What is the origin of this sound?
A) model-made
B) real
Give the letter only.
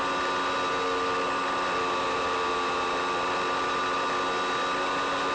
B